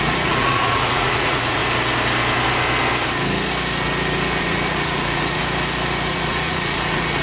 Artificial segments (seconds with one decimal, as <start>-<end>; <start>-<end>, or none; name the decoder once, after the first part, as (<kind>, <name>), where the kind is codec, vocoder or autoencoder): 0.0-1.6 (vocoder, Vocos); 4.4-5.4; 6.1-7.2